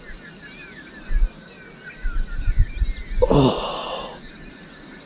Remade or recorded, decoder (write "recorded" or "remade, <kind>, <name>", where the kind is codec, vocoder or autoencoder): recorded